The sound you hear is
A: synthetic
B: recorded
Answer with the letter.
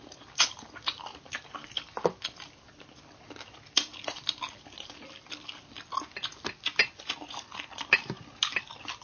B